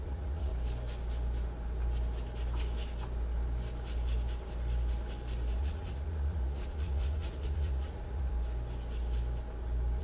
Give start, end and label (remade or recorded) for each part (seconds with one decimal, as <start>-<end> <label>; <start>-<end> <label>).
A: 0.0-0.5 remade; 0.5-5.6 recorded; 5.6-8.3 remade; 8.3-10.0 recorded